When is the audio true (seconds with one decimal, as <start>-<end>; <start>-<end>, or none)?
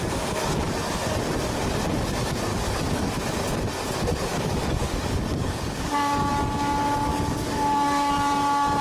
0.0-2.5; 3.1-4.3; 6.3-7.1; 8.1-8.8